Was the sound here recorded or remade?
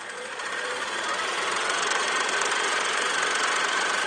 remade